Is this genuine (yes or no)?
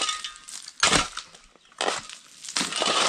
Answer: yes